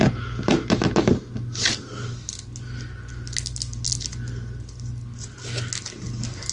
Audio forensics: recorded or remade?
recorded